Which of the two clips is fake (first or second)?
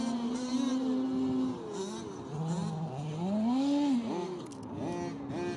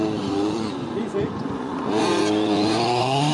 second